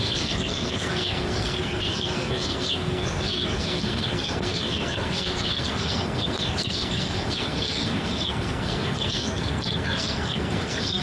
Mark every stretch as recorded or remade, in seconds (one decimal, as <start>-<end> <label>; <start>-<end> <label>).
0.0-11.0 remade